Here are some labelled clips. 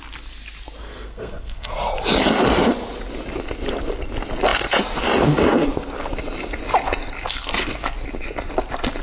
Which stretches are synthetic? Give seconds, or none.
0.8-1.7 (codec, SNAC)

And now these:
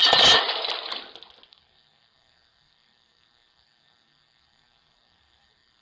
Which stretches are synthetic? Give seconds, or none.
1.5-5.8 (codec, SNAC)

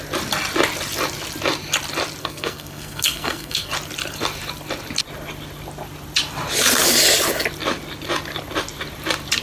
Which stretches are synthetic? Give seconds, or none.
2.2-3.7 (codec, SNAC)

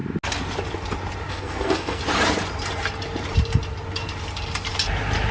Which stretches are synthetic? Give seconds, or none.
1.3-2.0 (codec, SNAC)

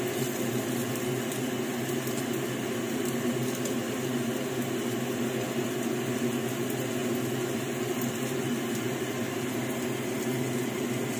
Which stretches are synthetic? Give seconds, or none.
none

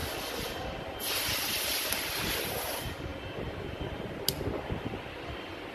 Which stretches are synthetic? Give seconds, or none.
none

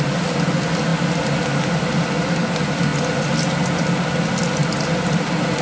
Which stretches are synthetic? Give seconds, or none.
none

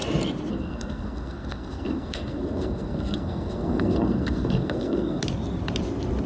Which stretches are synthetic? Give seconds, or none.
0.5-5.2 (codec, SNAC)